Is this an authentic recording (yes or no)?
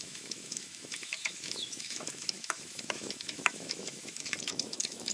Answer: no